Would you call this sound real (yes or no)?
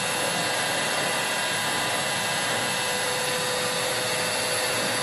yes